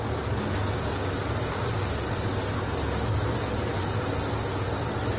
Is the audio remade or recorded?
recorded